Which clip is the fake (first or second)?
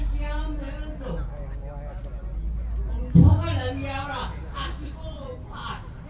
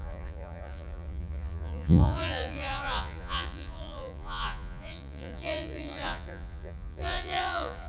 second